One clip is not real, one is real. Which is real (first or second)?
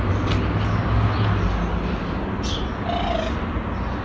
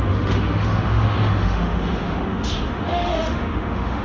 first